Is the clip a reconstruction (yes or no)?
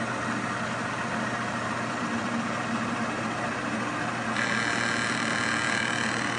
no